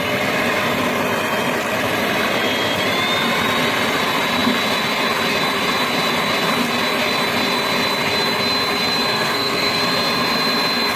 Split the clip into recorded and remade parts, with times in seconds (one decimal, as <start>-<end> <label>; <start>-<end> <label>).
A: 0.0-9.1 recorded; 9.1-9.8 remade; 9.8-11.0 recorded